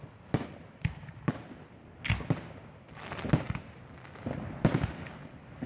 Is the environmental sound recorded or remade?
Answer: recorded